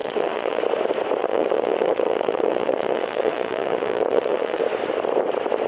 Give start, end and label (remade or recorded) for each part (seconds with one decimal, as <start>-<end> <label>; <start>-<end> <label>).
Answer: 0.0-0.6 remade; 0.6-1.2 recorded; 1.2-4.6 remade; 4.6-5.7 recorded